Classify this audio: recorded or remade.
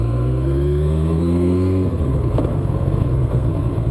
remade